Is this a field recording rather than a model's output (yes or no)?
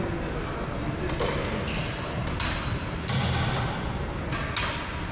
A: yes